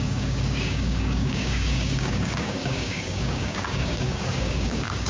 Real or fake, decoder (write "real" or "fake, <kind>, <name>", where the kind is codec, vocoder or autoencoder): fake, codec, DAC